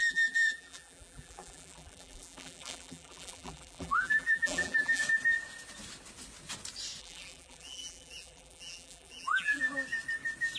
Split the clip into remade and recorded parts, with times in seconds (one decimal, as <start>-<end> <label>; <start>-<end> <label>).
0.0-5.0 remade; 5.0-7.0 recorded; 7.0-9.6 remade; 9.6-10.6 recorded